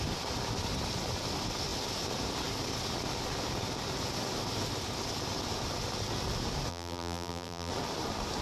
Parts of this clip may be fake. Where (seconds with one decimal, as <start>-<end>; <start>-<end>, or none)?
6.7-7.7